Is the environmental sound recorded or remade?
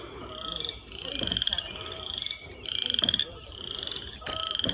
recorded